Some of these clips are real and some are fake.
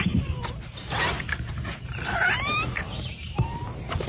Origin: fake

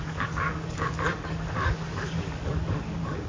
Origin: fake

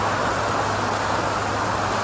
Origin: real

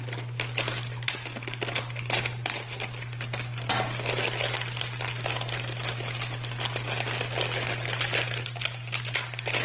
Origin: real